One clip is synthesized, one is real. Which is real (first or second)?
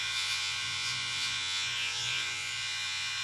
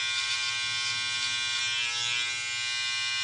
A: second